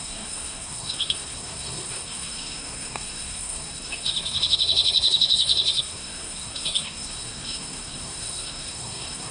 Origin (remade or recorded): remade